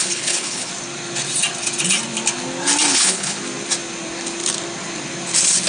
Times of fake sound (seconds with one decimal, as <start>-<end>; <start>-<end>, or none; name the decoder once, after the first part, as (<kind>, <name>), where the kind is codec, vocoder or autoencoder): 0.0-0.7 (codec, HILCodec); 2.9-3.4